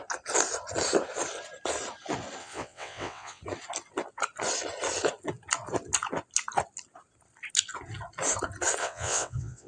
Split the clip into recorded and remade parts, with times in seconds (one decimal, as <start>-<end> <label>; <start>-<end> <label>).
0.0-2.4 recorded; 2.4-3.4 remade; 3.4-8.8 recorded; 8.8-9.7 remade